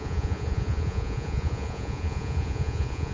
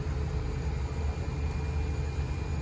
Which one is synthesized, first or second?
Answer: first